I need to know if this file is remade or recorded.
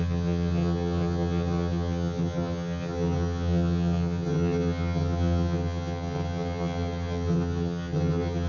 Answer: remade